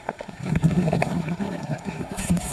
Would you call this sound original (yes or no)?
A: no